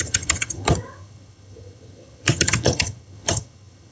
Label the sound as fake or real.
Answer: fake